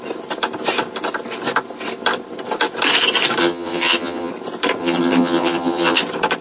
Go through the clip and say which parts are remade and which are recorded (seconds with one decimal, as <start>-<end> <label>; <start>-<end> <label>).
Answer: 0.0-3.4 recorded; 3.4-4.3 remade; 4.3-4.8 recorded; 4.8-6.0 remade; 6.0-6.4 recorded